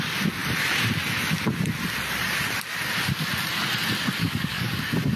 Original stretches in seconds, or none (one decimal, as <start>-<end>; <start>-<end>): 0.0-4.2; 4.8-5.2